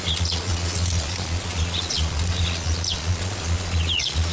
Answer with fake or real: fake